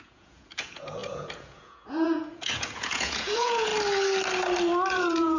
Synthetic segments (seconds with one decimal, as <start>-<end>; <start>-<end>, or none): 0.0-3.7; 4.9-5.4